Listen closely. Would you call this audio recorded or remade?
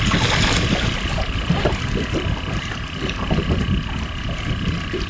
recorded